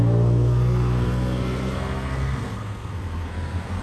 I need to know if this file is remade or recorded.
remade